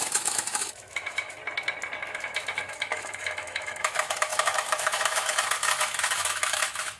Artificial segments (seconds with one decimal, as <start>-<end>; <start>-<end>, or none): 0.0-1.4; 2.0-7.0